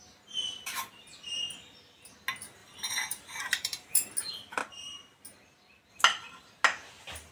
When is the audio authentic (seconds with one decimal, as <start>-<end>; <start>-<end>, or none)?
0.0-2.6; 4.1-7.3